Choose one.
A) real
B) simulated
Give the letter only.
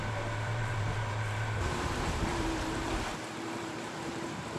B